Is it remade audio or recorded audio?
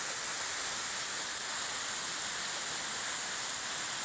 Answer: recorded